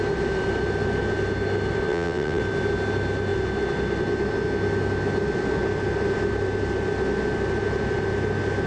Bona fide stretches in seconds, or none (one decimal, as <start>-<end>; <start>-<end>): 0.0-1.9; 2.4-8.7